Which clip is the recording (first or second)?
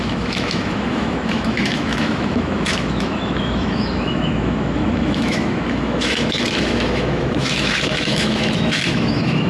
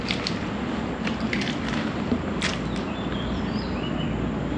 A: second